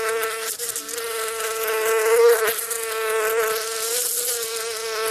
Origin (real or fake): real